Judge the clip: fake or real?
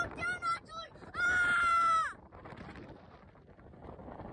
fake